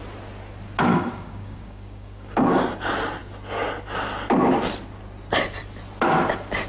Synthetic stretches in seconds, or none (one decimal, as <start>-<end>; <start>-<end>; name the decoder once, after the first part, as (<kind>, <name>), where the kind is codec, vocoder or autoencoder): 0.9-2.6 (codec, DAC)